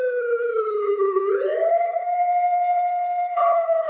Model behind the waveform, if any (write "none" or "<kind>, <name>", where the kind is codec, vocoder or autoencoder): codec, HILCodec